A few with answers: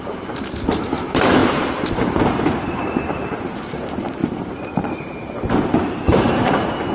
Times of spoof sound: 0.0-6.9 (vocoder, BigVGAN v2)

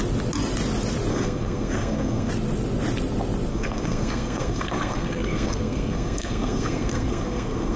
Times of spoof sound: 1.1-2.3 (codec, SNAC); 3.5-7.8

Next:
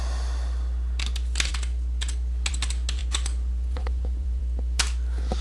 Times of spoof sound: 3.0-4.4 (vocoder, Vocos)

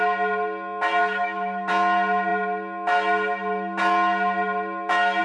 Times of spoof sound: 1.0-1.7 (autoencoder, DAC-VAE)

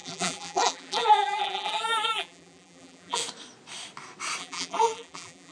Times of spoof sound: 0.0-3.2 (vocoder, BigVGAN v2); 4.4-5.5